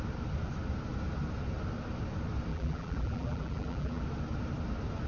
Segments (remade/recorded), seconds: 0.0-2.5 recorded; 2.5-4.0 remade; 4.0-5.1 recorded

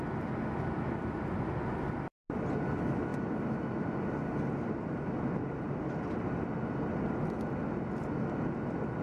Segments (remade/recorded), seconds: 0.0-9.0 recorded

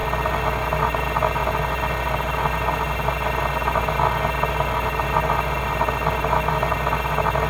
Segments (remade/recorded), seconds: 0.0-7.5 recorded

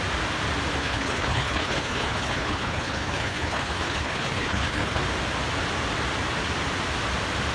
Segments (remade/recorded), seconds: 0.0-0.8 recorded; 0.8-5.0 remade; 5.0-7.5 recorded